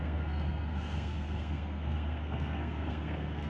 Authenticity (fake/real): fake